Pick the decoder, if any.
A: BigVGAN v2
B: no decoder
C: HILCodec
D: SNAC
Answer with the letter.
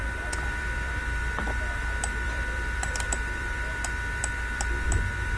A